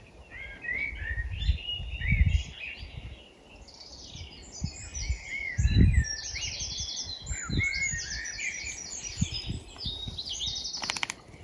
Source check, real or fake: real